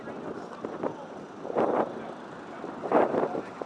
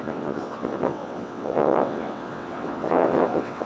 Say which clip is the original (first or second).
first